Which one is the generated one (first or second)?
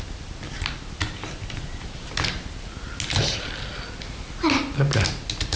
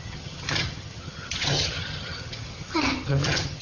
second